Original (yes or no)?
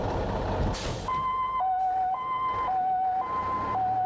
yes